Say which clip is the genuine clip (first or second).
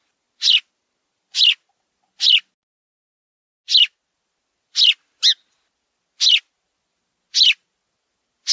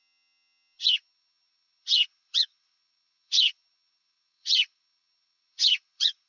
first